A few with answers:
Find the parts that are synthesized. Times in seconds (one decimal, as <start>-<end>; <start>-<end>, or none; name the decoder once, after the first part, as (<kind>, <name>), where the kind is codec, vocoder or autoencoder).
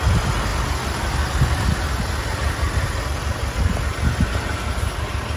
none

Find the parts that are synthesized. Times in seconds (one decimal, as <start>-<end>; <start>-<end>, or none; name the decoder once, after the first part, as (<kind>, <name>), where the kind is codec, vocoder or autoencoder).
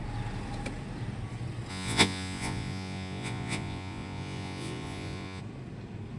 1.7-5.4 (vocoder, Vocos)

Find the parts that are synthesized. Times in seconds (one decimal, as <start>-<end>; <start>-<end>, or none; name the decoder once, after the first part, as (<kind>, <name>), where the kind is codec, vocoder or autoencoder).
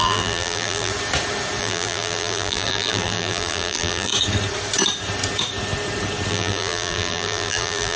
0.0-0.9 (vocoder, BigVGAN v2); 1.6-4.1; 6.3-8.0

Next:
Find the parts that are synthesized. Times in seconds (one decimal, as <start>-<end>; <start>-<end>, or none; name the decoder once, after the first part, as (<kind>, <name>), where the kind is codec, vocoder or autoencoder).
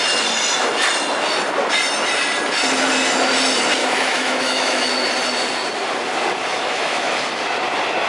3.8-4.9 (autoencoder, DAC-VAE); 6.5-7.4